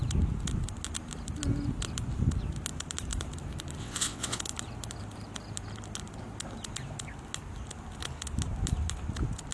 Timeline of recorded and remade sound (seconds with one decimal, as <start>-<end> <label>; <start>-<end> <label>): 0.0-3.8 recorded; 3.8-4.4 remade; 4.4-9.5 recorded